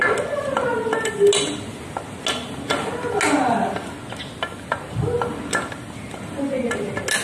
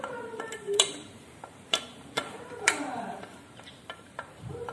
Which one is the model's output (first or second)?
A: second